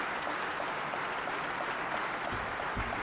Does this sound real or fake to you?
real